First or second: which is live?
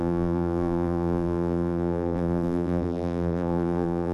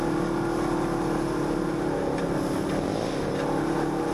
second